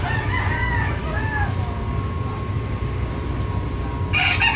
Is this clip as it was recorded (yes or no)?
yes